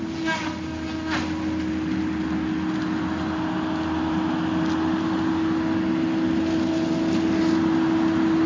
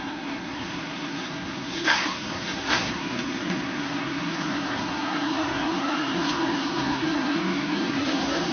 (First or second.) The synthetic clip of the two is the second